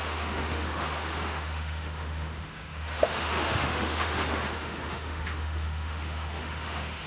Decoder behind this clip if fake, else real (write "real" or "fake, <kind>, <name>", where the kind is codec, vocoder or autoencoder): fake, autoencoder, DAC-VAE